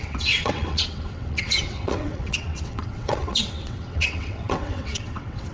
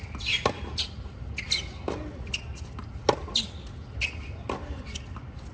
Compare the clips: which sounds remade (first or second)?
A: first